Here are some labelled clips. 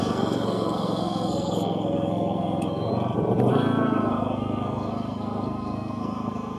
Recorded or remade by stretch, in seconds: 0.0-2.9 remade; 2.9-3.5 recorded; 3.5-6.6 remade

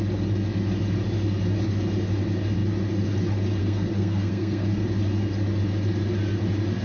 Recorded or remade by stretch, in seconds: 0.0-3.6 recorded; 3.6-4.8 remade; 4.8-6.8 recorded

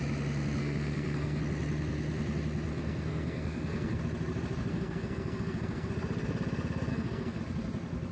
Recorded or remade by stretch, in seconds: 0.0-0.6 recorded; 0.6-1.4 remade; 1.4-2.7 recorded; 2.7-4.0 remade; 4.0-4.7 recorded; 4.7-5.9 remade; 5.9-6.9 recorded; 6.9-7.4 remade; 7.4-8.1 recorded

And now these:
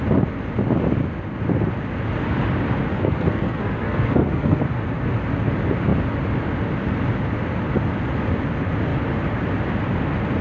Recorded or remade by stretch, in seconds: 0.0-2.9 recorded; 2.9-4.6 remade; 4.6-10.4 recorded

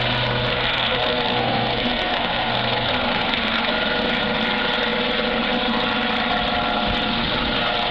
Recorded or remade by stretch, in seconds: 0.0-0.5 recorded; 0.5-3.7 remade; 3.7-7.9 recorded